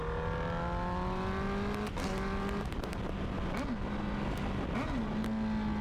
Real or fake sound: real